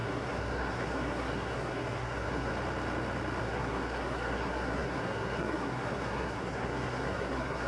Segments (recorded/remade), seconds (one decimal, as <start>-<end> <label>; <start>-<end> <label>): 0.0-2.5 remade; 2.5-3.4 recorded; 3.4-7.7 remade